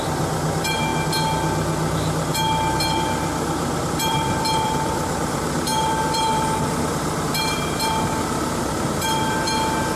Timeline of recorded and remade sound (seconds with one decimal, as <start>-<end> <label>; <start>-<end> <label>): 0.0-0.9 remade; 0.9-3.9 recorded; 3.9-10.0 remade